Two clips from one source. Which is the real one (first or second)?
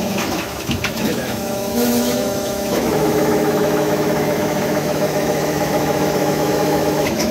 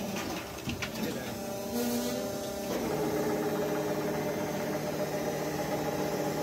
second